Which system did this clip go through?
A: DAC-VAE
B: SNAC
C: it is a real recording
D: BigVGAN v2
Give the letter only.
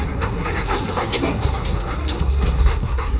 B